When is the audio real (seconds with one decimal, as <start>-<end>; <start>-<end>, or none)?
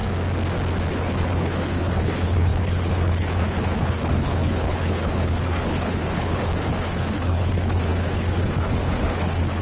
0.0-0.9